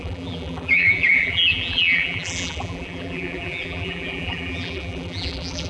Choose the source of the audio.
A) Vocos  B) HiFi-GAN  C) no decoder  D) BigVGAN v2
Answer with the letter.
D